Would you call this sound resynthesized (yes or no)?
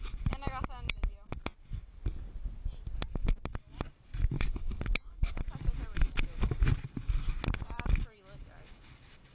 no